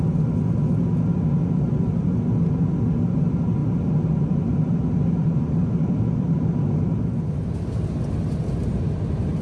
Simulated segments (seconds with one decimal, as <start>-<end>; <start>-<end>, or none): 3.6-5.9

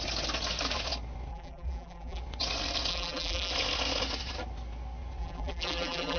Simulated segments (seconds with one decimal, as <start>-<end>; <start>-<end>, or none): 1.3-2.2; 2.9-3.5; 5.2-6.2